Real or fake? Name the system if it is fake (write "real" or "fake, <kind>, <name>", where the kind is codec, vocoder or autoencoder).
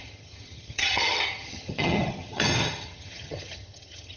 fake, vocoder, HiFi-GAN